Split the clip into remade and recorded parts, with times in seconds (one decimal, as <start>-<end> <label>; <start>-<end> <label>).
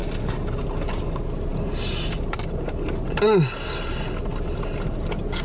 0.0-5.4 recorded